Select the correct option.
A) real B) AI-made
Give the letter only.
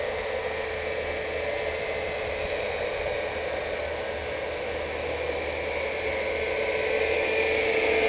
A